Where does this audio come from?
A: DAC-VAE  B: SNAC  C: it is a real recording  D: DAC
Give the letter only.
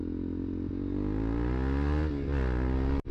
C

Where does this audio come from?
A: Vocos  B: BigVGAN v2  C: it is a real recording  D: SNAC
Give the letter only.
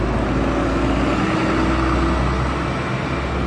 C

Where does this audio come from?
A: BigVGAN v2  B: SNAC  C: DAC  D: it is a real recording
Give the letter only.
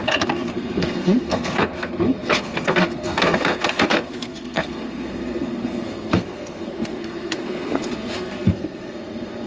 B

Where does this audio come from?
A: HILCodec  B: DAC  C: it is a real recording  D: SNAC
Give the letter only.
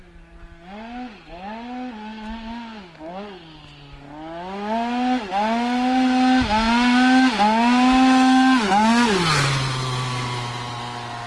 C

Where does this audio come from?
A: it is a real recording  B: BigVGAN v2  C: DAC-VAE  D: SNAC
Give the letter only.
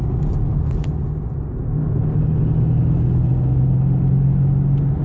A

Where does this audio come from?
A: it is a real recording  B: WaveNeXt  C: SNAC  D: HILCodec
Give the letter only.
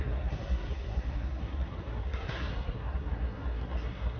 C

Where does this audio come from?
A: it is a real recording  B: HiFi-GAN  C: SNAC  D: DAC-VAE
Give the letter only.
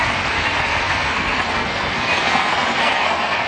C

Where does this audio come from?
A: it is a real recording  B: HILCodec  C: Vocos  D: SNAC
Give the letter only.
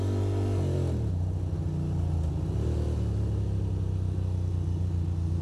A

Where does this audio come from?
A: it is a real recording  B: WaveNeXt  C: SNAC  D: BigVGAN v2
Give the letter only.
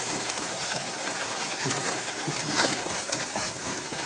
C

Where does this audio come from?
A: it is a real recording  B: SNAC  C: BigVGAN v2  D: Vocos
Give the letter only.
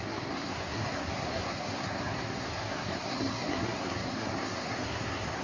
B